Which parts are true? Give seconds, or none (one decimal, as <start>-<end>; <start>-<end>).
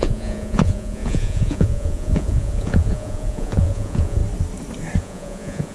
4.2-5.0